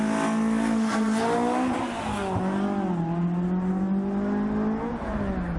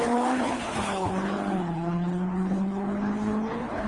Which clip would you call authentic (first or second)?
first